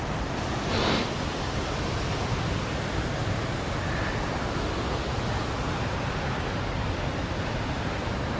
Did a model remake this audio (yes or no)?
no